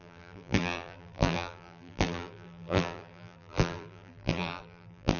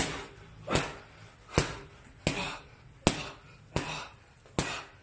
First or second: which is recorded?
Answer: second